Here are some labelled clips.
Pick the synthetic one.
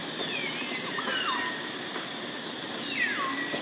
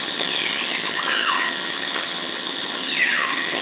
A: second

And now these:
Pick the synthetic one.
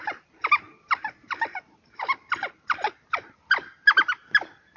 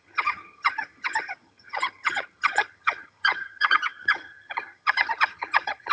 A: second